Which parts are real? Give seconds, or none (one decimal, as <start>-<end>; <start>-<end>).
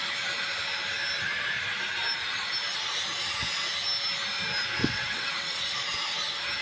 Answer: 0.0-4.8; 5.6-6.6